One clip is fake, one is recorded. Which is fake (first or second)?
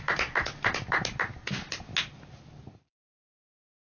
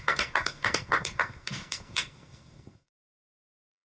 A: second